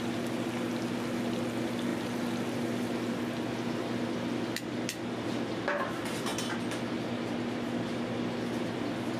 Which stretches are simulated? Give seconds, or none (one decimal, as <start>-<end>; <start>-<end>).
none